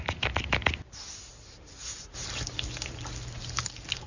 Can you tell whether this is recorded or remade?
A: recorded